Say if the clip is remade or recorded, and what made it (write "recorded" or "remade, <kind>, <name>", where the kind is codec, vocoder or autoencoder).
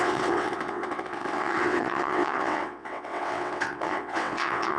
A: remade, vocoder, WaveNeXt